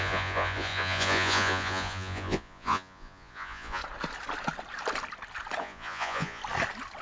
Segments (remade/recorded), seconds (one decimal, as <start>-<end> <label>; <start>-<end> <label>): 0.0-3.8 remade; 3.8-5.6 recorded; 5.6-6.4 remade; 6.4-7.0 recorded